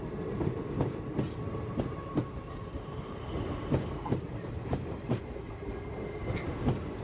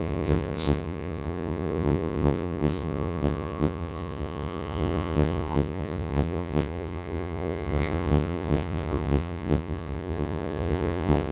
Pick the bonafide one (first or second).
first